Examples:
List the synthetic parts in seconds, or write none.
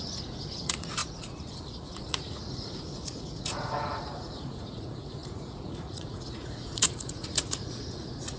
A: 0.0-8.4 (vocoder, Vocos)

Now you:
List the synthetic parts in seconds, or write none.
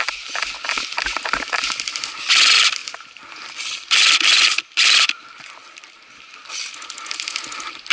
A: none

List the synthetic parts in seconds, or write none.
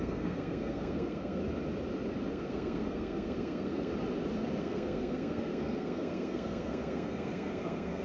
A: 0.0-1.4 (codec, SNAC); 2.3-3.9; 4.6-8.0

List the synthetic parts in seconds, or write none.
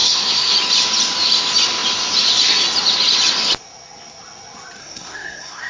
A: 0.0-0.5 (codec, SNAC); 4.8-5.7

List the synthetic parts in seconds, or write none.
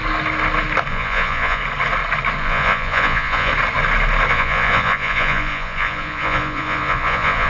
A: 0.9-1.6 (vocoder, Vocos); 2.4-3.5; 4.3-7.5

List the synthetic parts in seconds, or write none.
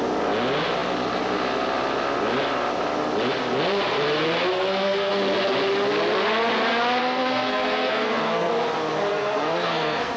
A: 4.5-5.1 (codec, SNAC); 7.0-8.5; 9.1-10.2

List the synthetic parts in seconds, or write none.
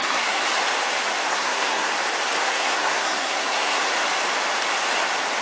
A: 0.0-0.4 (codec, SNAC); 1.3-1.9; 2.4-3.9